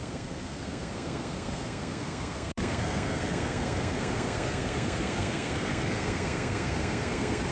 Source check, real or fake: fake